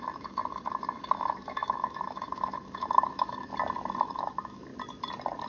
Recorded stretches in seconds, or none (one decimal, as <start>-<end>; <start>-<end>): 3.5-4.0; 4.7-5.5